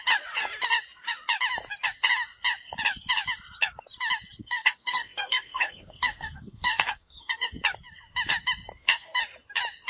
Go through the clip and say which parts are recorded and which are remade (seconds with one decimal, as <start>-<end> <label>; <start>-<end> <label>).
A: 0.0-4.4 recorded; 4.4-7.6 remade; 7.6-8.7 recorded; 8.7-9.2 remade; 9.2-9.9 recorded